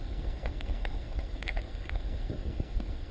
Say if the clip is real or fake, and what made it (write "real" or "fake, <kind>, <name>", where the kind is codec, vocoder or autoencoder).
fake, codec, SNAC